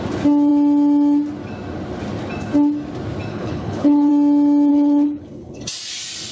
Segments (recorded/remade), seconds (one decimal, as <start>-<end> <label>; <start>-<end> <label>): 0.0-3.3 recorded; 3.3-4.1 remade; 4.1-4.7 recorded; 4.7-5.6 remade; 5.6-6.3 recorded